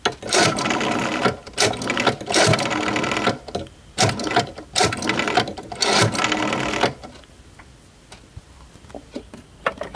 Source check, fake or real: real